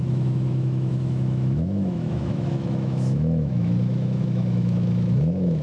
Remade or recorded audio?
remade